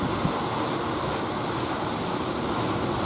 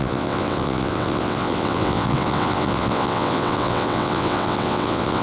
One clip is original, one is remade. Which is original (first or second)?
first